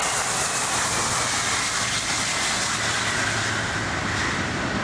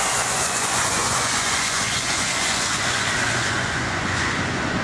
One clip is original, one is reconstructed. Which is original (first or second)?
first